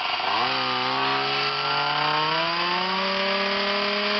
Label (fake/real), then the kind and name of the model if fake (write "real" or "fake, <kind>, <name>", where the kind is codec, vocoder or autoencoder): real